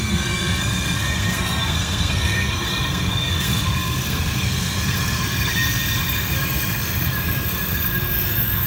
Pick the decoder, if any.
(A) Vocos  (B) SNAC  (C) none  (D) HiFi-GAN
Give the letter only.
B